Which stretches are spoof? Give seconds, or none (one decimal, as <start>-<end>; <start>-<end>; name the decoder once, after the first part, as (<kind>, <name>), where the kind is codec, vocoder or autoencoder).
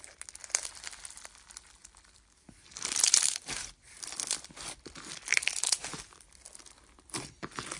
0.4-4.5 (vocoder, BigVGAN v2); 5.4-7.8